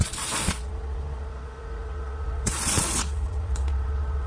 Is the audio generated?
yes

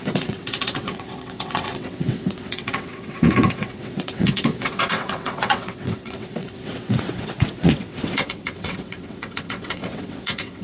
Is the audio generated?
yes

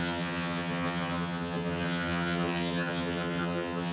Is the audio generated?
yes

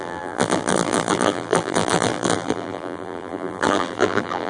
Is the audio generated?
yes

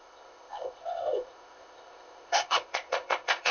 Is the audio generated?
yes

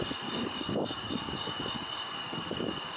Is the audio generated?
yes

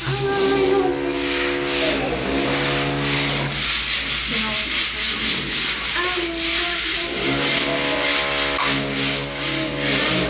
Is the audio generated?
no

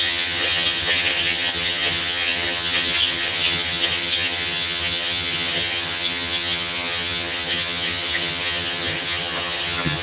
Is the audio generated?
yes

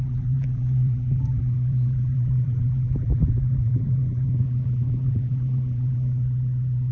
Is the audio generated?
yes